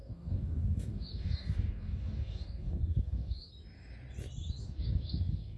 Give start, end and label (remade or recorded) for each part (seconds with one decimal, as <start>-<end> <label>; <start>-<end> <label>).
0.0-3.5 remade; 3.5-4.6 recorded; 4.6-5.6 remade